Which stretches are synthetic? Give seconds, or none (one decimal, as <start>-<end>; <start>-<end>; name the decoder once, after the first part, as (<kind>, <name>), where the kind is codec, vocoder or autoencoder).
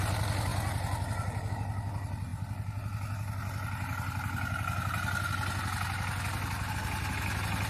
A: none